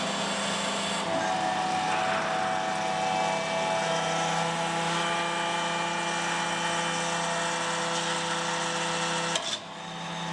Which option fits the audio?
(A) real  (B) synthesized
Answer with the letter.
A